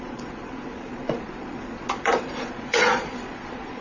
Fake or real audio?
fake